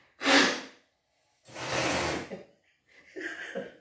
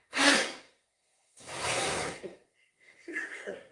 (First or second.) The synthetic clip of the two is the second